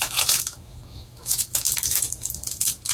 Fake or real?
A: fake